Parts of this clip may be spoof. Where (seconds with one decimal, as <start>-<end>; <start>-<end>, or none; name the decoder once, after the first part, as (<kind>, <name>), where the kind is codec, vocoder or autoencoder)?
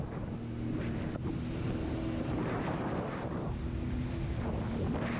2.4-3.5 (vocoder, BigVGAN v2)